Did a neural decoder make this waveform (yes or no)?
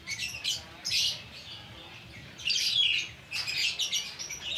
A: no